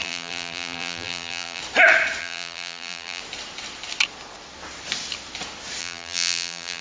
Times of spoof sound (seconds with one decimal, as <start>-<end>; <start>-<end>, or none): 0.0-1.6; 2.2-3.2; 5.8-6.8